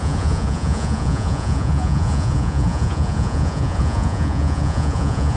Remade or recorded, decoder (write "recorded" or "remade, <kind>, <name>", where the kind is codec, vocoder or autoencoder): remade, vocoder, Vocos